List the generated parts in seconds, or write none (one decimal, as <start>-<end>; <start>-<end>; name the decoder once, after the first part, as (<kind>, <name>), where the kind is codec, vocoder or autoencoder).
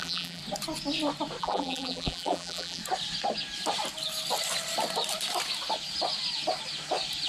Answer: 0.0-0.4 (vocoder, BigVGAN v2); 1.4-2.8